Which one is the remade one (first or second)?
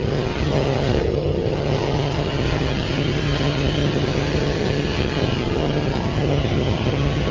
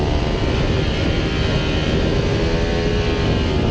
first